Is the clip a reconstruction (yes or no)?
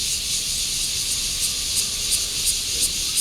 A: no